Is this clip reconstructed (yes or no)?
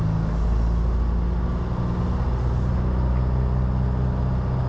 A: no